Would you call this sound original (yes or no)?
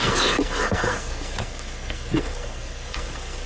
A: no